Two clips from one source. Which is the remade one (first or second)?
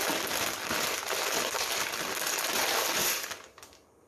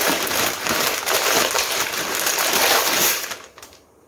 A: second